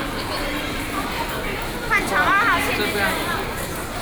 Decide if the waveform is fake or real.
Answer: real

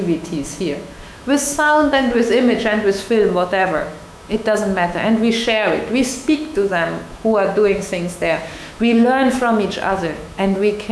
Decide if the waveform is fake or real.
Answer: fake